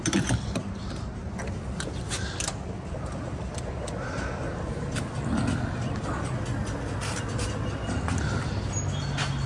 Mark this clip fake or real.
real